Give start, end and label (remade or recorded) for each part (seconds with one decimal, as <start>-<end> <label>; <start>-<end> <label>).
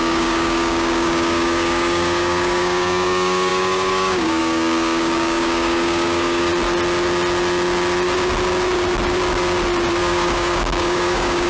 0.0-6.5 remade; 6.5-10.0 recorded; 10.0-11.5 remade